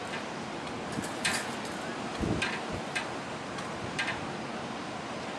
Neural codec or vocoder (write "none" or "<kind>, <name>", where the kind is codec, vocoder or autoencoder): none